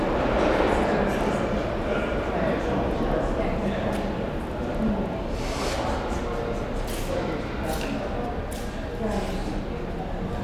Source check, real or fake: real